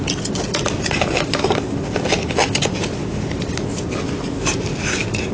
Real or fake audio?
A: real